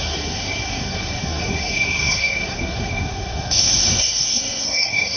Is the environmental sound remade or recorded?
remade